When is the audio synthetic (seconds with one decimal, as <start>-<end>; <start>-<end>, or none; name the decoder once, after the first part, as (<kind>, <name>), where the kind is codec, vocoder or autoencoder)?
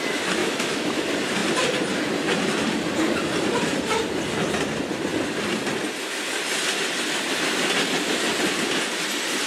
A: 0.4-1.0 (autoencoder, DAC-VAE)